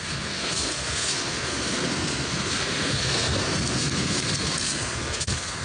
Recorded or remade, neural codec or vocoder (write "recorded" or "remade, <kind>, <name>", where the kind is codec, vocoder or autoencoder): remade, codec, SNAC